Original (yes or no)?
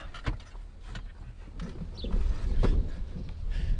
yes